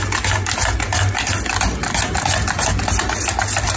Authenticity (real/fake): real